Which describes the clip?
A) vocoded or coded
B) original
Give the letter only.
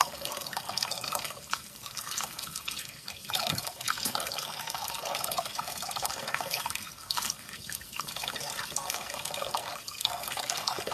A